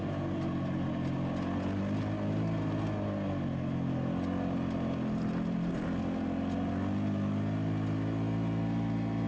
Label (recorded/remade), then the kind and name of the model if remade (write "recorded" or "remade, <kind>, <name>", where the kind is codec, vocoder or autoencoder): recorded